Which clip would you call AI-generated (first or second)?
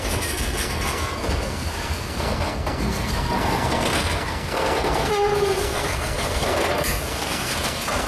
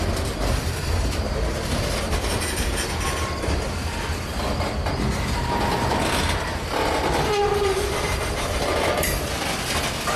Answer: first